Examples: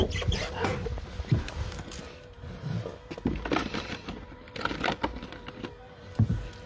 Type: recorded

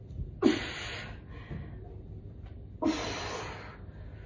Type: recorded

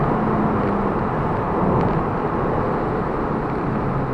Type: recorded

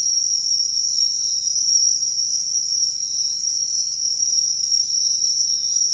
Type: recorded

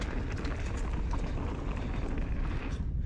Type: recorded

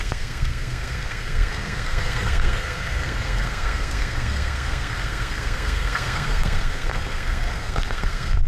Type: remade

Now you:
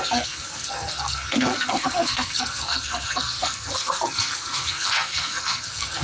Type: remade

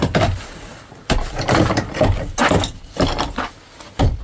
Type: recorded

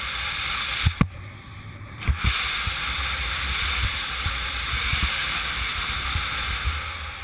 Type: recorded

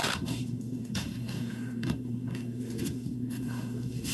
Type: remade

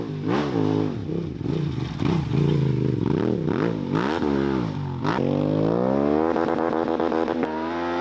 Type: recorded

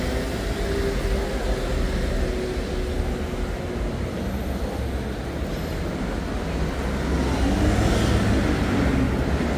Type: recorded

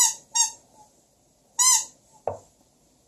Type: recorded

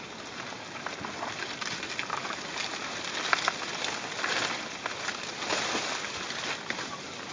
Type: recorded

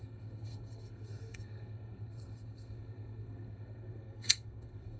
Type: remade